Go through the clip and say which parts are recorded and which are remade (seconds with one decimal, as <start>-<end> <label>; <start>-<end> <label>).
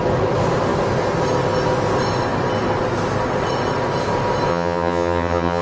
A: 0.0-4.5 recorded; 4.5-5.6 remade